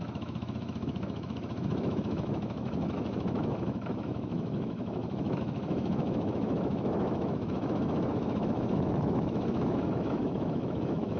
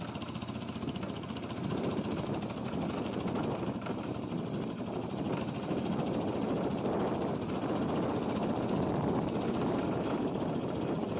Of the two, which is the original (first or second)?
second